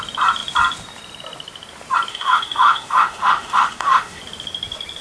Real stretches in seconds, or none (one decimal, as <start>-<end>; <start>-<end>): 0.0-2.1; 4.2-5.0